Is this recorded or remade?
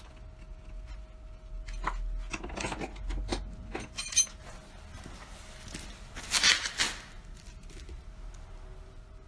recorded